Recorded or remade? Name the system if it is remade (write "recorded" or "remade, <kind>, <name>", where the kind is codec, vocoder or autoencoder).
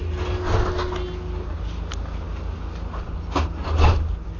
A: recorded